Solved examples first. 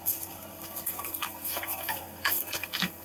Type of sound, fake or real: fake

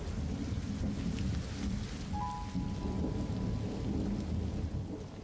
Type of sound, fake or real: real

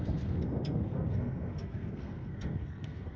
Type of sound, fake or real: fake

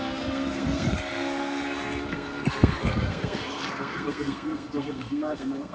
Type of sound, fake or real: fake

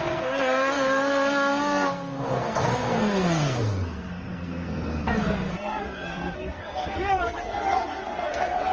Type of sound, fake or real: fake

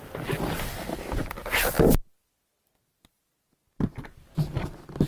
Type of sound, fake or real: real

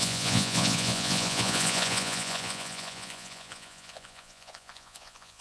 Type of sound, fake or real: fake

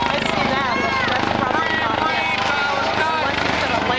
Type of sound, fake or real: real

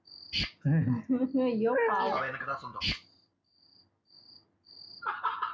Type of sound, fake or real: real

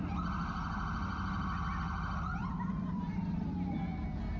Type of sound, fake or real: real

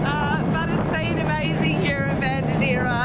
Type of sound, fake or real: real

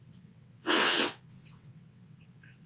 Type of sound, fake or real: fake